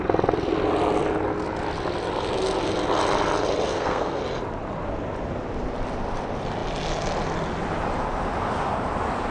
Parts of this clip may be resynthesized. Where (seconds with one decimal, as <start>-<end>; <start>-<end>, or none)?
3.7-4.2